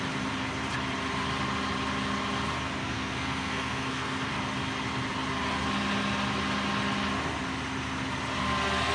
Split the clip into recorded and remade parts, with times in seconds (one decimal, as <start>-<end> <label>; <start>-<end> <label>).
0.0-2.8 recorded; 2.8-4.3 remade; 4.3-8.9 recorded

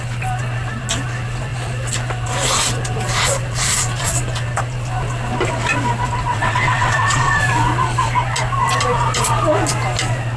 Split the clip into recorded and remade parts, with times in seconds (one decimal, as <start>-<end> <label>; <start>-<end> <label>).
0.0-6.3 recorded; 6.3-7.4 remade; 7.4-10.4 recorded